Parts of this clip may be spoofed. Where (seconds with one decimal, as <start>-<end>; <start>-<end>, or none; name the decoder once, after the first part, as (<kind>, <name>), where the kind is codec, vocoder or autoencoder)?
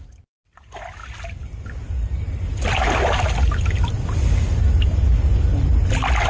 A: none